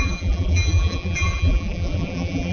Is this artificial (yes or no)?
yes